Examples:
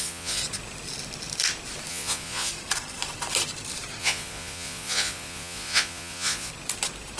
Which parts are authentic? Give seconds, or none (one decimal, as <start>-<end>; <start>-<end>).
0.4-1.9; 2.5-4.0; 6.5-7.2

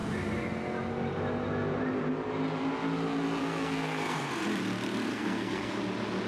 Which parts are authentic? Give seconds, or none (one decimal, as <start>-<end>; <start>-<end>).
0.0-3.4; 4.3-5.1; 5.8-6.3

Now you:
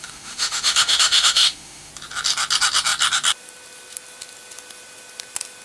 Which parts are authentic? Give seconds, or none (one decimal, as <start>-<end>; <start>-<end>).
1.9-5.6

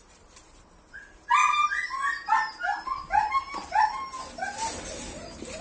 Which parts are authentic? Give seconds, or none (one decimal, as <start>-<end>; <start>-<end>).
1.4-4.8

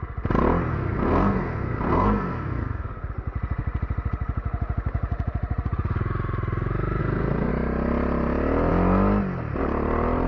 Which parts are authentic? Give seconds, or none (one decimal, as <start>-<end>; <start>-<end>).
0.0-0.7; 3.1-7.0; 7.5-10.3

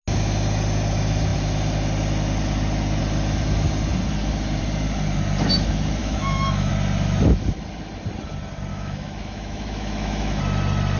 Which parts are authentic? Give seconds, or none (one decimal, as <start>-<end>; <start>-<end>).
0.0-6.0; 6.7-8.7; 10.4-11.0

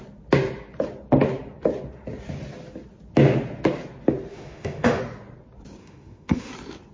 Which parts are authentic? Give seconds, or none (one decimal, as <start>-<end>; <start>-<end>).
0.0-4.3; 5.0-5.8; 6.5-6.9

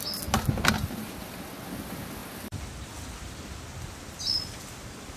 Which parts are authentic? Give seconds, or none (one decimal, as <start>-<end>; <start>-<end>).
0.0-2.2; 4.6-5.2